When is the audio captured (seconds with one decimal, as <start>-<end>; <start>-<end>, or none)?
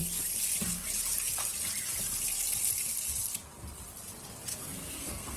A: 0.0-4.5